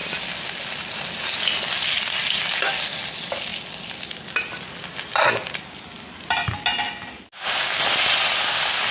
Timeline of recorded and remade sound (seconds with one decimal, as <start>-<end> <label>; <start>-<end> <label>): 0.0-8.9 recorded